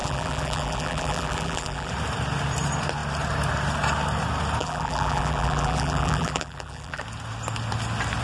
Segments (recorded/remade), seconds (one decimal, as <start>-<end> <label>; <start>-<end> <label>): 0.0-1.9 remade; 1.9-4.6 recorded; 4.6-7.0 remade; 7.0-8.2 recorded